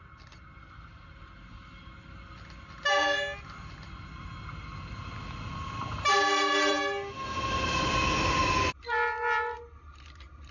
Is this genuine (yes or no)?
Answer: yes